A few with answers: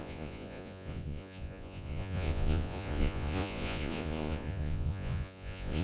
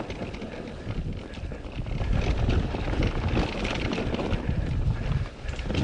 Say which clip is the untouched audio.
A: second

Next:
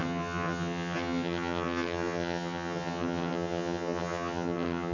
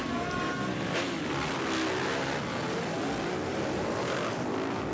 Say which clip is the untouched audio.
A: second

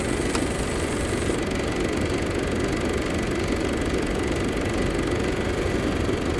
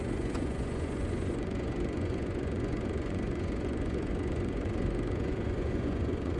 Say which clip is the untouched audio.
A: first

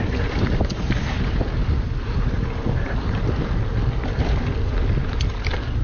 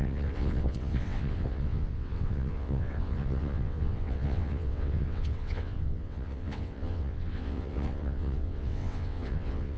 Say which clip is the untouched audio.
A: first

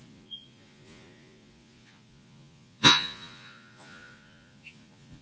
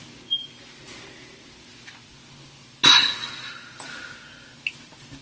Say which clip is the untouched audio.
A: second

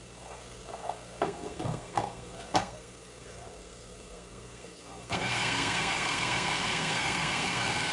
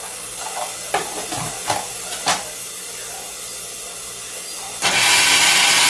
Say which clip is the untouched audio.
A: second